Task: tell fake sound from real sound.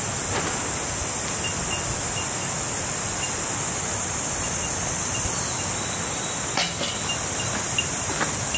real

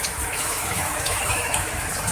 fake